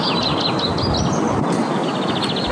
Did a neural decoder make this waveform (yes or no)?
no